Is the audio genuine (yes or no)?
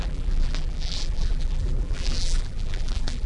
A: no